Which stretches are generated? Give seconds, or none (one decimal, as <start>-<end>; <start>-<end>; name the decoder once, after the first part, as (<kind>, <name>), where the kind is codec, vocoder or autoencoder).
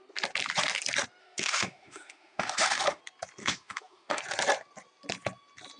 1.2-3.0 (autoencoder, DAC-VAE); 3.4-4.2